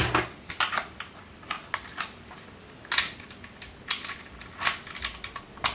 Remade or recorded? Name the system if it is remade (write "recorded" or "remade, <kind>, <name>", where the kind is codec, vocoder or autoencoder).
recorded